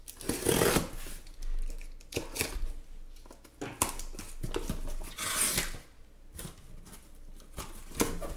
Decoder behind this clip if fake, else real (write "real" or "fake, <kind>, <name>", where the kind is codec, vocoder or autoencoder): real